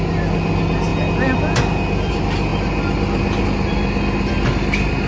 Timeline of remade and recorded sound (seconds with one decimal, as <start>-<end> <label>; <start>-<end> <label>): 0.0-5.1 recorded